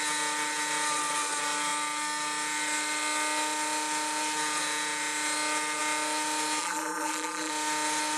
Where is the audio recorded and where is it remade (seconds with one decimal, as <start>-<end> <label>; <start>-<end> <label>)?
0.0-6.6 recorded; 6.6-7.5 remade; 7.5-8.2 recorded